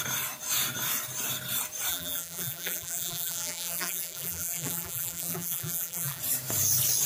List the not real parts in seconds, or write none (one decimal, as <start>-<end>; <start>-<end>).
1.9-6.2